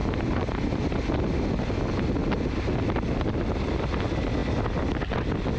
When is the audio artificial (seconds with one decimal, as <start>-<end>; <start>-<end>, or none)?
none